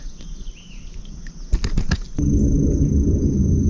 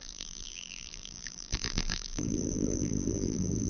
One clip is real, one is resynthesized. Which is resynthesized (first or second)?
second